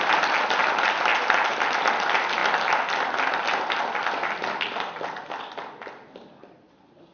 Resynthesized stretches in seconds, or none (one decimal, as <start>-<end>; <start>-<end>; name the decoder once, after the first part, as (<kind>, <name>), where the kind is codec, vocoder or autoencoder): none